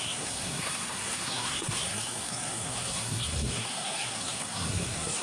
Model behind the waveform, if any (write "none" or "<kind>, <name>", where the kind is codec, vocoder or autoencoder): codec, SNAC